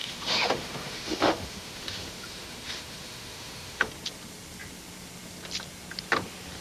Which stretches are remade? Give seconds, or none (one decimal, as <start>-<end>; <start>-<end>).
0.0-3.9